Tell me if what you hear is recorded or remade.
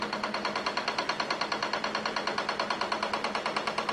recorded